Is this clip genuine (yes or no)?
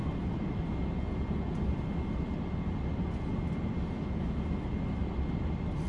yes